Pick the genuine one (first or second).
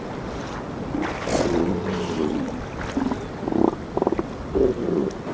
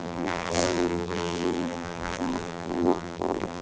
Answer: first